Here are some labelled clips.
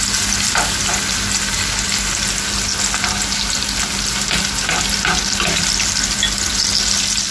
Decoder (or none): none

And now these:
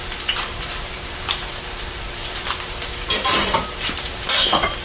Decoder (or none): vocoder, BigVGAN v2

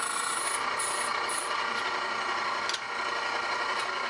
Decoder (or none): none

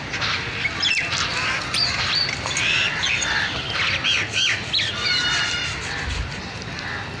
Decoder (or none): none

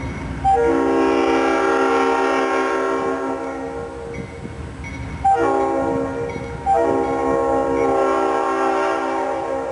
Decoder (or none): none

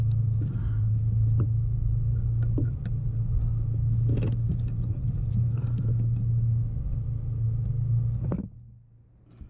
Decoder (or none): none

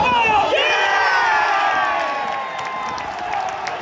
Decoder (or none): none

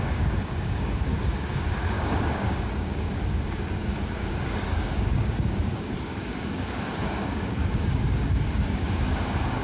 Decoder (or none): codec, DAC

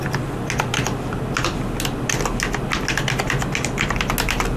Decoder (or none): none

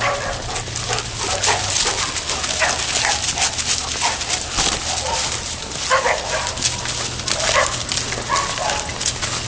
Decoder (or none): none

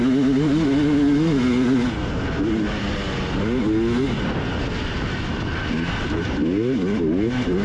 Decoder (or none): none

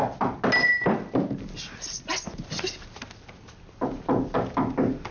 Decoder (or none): none